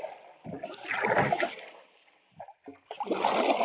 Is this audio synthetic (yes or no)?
no